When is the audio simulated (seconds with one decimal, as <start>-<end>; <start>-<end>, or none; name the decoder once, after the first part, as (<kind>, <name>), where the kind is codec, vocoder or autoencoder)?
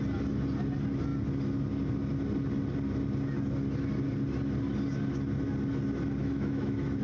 6.2-7.0 (autoencoder, DAC-VAE)